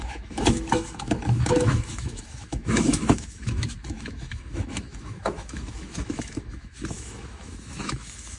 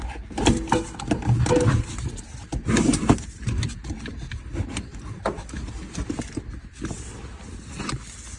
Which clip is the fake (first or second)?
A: first